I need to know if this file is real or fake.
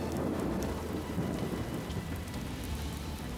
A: fake